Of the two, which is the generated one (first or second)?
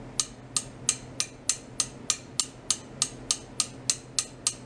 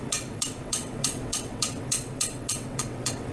second